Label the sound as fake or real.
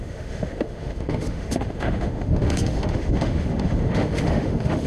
fake